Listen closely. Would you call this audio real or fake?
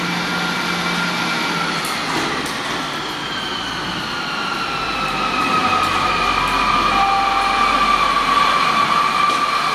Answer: real